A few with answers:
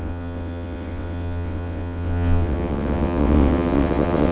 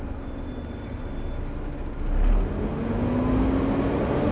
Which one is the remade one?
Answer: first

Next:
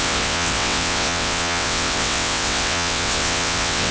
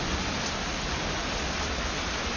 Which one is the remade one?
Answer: first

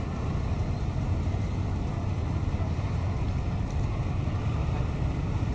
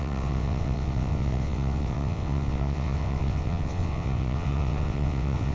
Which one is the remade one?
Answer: second